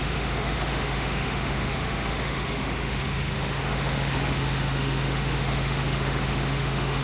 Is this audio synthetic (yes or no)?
yes